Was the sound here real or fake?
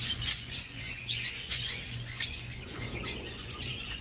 fake